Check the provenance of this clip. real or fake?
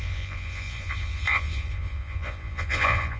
fake